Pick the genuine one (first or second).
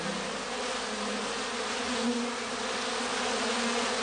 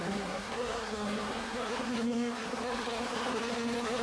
first